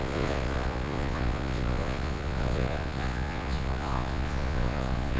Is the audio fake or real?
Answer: fake